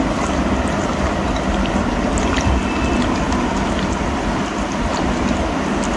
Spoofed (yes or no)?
no